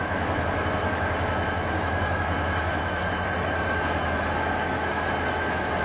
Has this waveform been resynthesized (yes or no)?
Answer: yes